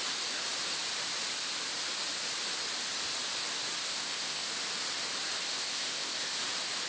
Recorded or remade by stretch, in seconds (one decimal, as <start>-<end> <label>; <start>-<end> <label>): 0.0-3.8 recorded; 3.8-4.5 remade; 4.5-5.5 recorded; 5.5-6.4 remade; 6.4-6.9 recorded